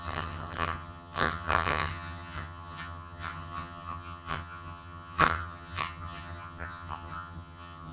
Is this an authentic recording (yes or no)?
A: no